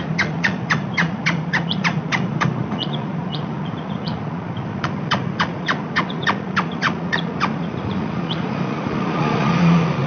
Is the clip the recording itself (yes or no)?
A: no